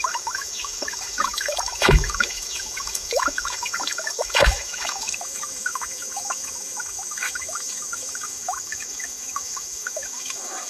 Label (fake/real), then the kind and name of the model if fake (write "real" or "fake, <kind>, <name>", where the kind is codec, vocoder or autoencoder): fake, autoencoder, DAC-VAE